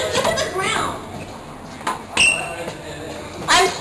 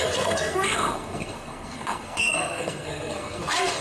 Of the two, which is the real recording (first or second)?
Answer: first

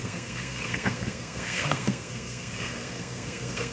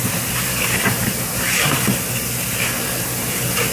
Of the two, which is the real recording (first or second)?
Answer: second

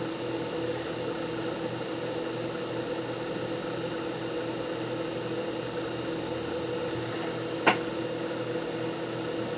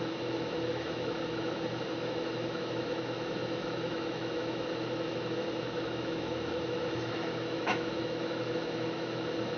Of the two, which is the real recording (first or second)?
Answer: first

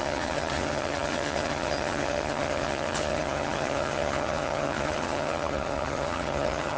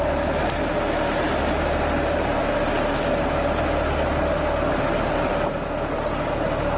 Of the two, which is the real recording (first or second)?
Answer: second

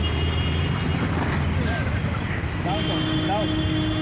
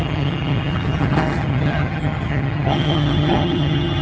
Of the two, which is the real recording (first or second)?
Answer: first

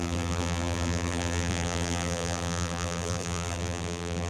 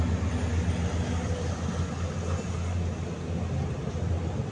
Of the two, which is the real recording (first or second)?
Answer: second